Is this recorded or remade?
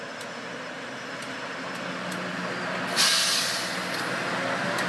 recorded